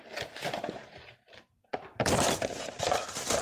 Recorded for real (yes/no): no